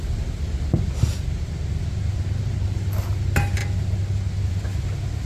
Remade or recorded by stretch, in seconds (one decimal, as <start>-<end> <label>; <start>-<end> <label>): 0.0-5.3 recorded